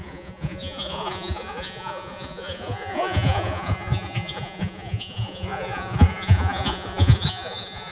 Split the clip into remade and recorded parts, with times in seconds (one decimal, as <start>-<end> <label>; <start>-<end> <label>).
0.0-7.9 remade